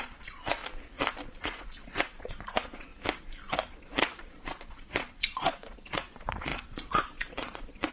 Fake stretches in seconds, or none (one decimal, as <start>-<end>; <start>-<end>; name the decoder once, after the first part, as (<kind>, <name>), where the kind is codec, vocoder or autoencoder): 0.0-0.6 (vocoder, Vocos); 1.4-2.9; 3.7-7.9